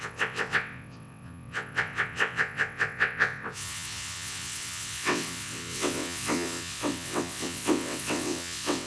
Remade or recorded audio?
remade